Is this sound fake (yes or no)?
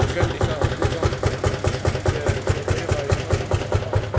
no